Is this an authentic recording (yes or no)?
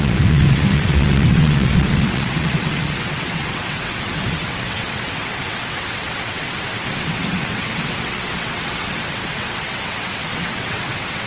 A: no